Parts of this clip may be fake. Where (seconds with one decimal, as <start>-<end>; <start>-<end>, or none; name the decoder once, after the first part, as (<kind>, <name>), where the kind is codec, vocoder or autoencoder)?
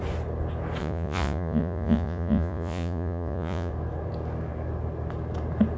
0.8-3.7 (vocoder, Vocos)